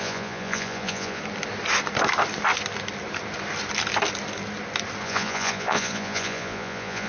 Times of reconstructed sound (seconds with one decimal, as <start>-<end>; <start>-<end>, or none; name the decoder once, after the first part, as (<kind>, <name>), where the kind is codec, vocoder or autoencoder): 0.0-1.2 (vocoder, Vocos); 5.0-7.1